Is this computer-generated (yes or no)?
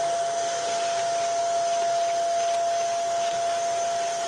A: no